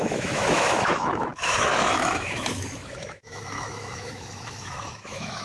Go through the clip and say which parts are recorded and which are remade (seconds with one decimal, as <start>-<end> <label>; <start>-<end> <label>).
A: 0.0-5.4 remade